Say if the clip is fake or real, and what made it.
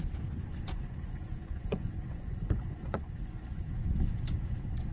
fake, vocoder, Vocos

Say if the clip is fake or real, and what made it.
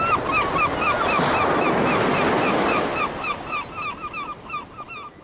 real